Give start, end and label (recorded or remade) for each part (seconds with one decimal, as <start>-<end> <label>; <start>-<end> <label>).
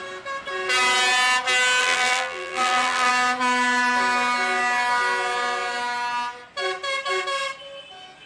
0.0-1.8 recorded; 1.8-3.1 remade; 3.1-8.3 recorded